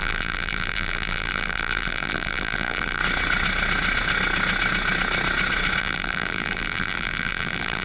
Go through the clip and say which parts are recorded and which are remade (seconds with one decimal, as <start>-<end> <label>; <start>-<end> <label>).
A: 0.0-3.0 remade; 3.0-5.8 recorded; 5.8-7.8 remade